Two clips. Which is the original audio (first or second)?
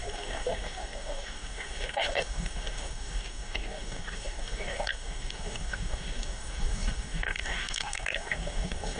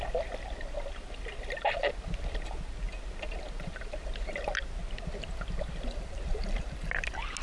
second